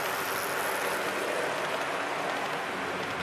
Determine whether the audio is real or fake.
real